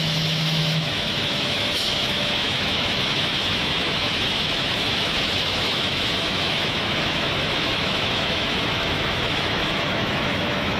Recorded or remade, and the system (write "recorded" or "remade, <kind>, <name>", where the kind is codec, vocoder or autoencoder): remade, autoencoder, DAC-VAE